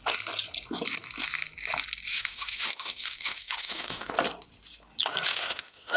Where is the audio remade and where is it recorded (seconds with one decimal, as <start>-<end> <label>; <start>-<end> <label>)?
0.0-2.1 recorded; 2.1-4.1 remade; 4.1-5.3 recorded; 5.3-6.0 remade